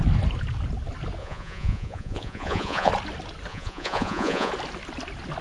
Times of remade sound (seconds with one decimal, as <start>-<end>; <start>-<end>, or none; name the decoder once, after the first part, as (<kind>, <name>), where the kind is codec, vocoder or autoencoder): 1.2-2.9 (vocoder, Vocos); 3.5-4.5